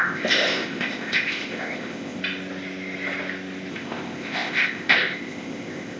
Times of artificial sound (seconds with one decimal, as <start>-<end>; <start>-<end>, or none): 0.0-2.2; 3.7-6.0